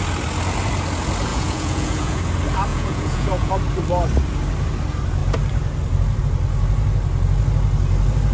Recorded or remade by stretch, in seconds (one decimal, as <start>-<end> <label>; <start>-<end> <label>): 0.0-1.3 recorded; 1.3-2.2 remade; 2.2-2.7 recorded; 2.7-3.5 remade; 3.5-8.3 recorded